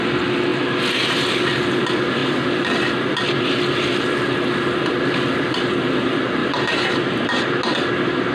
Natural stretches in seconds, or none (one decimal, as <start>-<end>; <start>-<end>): 0.0-6.4; 7.4-8.3